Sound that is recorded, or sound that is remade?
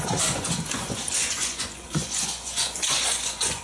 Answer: remade